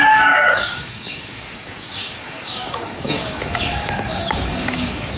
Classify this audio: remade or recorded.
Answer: remade